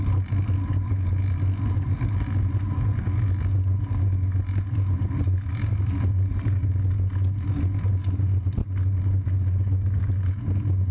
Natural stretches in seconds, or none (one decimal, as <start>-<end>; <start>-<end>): 0.0-10.9